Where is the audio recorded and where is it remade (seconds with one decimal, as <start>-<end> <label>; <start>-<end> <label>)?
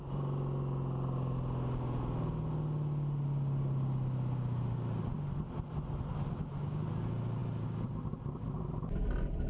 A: 0.0-9.5 recorded